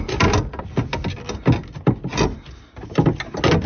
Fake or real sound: real